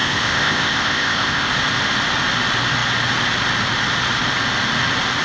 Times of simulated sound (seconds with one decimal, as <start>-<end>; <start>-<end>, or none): 0.0-1.5